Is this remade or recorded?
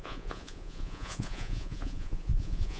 remade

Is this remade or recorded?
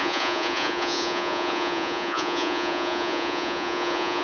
remade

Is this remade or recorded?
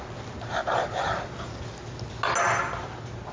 recorded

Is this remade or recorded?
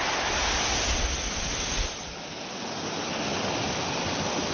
recorded